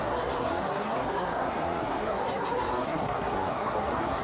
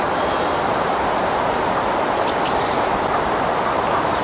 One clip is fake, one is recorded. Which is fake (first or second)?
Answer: first